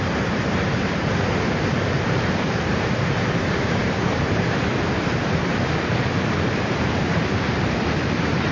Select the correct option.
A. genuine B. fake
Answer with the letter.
B